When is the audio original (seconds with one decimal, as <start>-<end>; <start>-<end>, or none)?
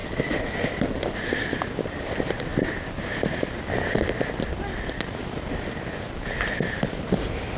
0.0-7.6